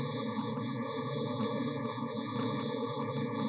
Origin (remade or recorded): remade